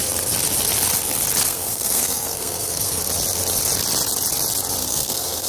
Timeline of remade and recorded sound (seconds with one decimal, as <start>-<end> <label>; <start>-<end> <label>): 0.0-1.5 recorded; 1.5-3.0 remade; 3.0-4.8 recorded; 4.8-5.5 remade